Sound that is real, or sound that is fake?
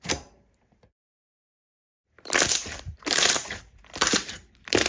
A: fake